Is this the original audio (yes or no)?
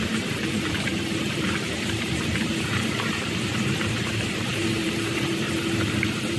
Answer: no